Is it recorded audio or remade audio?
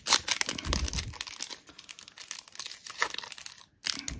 recorded